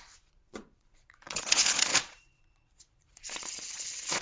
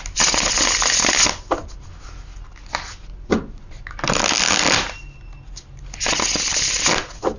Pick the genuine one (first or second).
second